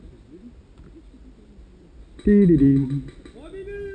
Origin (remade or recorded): recorded